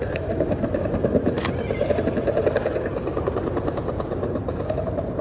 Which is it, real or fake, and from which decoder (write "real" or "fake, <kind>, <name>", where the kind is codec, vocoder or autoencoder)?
fake, vocoder, BigVGAN v2